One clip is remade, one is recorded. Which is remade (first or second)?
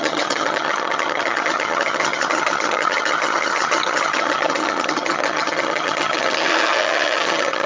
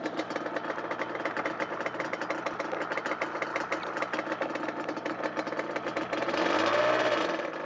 first